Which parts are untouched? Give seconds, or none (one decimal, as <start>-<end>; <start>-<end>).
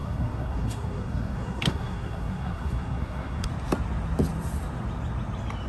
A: 3.5-5.7